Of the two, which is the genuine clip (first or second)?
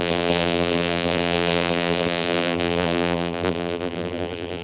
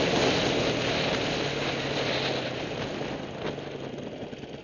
second